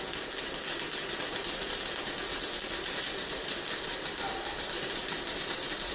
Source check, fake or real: fake